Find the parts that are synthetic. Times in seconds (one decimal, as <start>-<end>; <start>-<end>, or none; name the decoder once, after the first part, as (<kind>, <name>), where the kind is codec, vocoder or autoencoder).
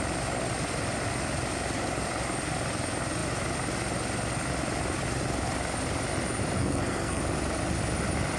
6.6-7.2 (codec, SNAC)